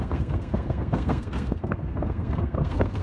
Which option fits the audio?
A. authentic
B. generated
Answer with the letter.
B